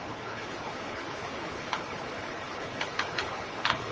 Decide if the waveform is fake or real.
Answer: fake